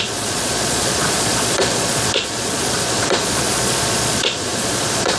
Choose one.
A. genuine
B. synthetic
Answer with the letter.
B